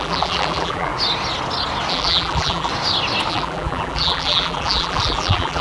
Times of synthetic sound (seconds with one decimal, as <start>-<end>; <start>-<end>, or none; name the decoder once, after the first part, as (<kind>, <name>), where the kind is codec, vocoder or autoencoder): 0.0-0.9 (vocoder, BigVGAN v2); 1.9-2.7; 3.3-5.6